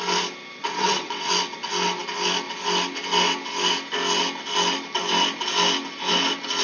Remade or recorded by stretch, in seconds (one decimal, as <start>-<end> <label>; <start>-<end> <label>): 0.0-0.6 recorded; 0.6-1.3 remade; 1.3-6.6 recorded